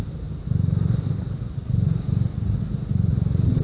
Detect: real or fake real